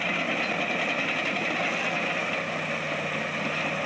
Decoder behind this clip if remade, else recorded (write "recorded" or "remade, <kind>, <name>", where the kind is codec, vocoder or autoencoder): recorded